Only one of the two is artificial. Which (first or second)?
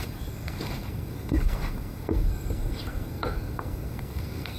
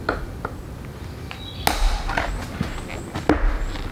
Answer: first